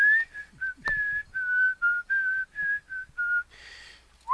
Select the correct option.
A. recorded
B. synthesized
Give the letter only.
A